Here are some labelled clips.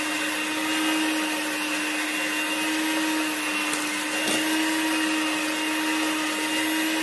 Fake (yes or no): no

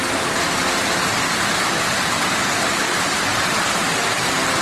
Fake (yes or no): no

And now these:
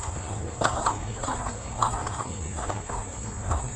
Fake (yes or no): yes